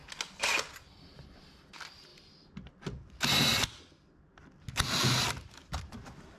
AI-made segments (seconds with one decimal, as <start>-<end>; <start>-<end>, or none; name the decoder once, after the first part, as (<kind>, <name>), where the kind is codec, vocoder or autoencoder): none